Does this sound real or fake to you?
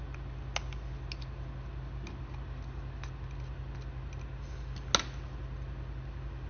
real